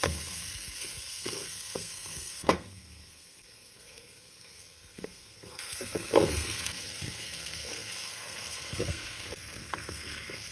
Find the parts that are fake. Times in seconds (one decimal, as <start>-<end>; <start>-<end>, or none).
0.0-10.5